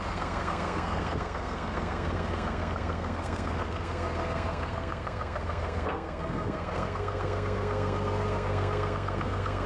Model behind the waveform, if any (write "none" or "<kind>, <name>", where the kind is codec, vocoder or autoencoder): codec, SNAC